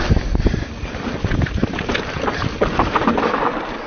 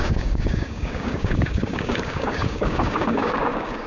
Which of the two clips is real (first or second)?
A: first